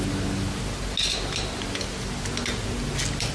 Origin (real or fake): real